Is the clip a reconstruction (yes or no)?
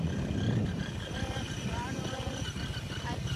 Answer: yes